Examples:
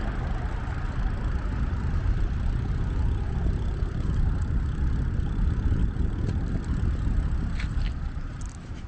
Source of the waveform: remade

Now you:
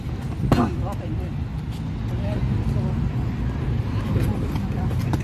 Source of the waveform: recorded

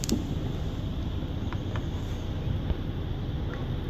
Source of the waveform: recorded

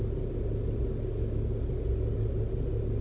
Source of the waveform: recorded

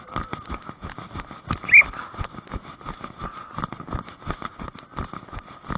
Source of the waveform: recorded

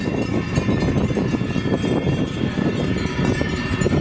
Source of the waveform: remade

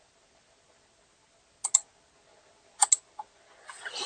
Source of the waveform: recorded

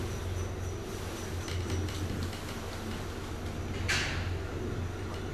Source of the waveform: recorded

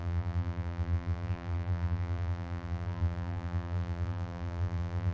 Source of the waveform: remade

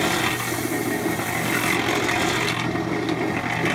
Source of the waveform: recorded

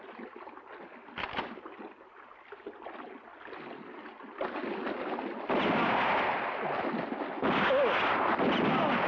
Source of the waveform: recorded